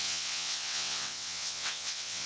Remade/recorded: remade